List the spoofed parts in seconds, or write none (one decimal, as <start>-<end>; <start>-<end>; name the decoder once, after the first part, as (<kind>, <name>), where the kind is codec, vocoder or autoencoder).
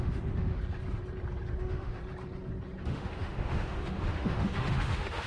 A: 0.0-0.6 (autoencoder, DAC-VAE); 1.6-2.0; 2.8-5.3